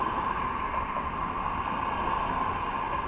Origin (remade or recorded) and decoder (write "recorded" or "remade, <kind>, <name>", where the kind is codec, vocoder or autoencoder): recorded